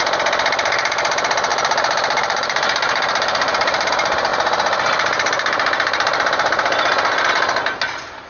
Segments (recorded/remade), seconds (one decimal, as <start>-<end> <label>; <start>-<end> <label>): 0.0-1.5 recorded; 1.5-3.9 remade; 3.9-8.3 recorded